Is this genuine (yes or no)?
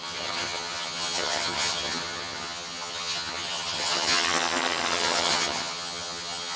no